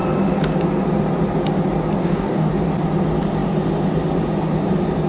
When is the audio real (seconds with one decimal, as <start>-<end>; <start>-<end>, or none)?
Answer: 0.0-2.0; 2.5-5.1

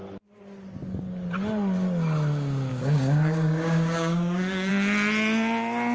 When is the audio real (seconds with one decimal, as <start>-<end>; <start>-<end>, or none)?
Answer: 0.0-2.7; 4.7-5.9